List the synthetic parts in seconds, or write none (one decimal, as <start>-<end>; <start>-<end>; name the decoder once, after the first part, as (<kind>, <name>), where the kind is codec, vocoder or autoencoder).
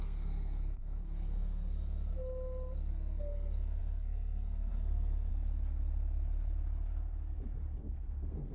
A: 0.0-2.1 (codec, SNAC); 2.9-5.3; 7.8-8.5